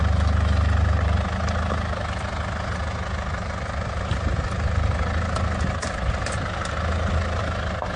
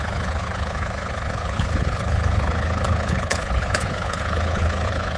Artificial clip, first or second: second